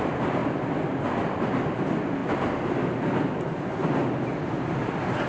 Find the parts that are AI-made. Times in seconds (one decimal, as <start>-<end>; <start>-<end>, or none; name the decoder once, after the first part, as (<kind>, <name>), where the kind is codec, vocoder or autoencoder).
2.2-3.4 (vocoder, BigVGAN v2)